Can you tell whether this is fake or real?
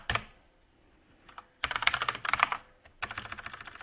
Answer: real